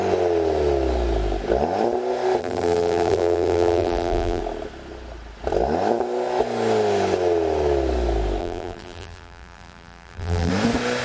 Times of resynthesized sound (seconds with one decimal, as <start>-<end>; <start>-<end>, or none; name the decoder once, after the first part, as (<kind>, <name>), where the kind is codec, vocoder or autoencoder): 2.4-4.4 (vocoder, BigVGAN v2); 8.4-10.5